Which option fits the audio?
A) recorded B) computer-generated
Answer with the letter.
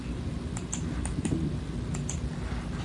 A